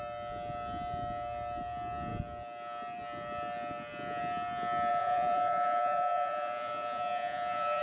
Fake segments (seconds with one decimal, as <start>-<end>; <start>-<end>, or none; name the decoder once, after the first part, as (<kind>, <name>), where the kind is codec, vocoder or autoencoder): 4.9-7.8 (vocoder, Vocos)